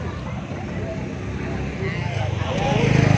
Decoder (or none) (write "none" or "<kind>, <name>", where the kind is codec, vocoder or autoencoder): none